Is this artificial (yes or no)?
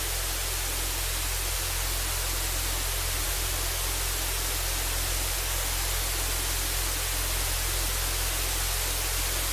no